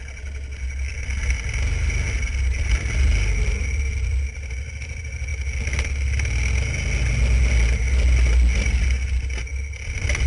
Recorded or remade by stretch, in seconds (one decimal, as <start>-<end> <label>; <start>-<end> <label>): 0.0-10.3 recorded